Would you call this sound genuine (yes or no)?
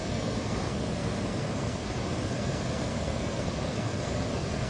no